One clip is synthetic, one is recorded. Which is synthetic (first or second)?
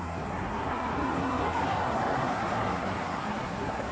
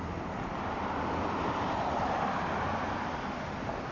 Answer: first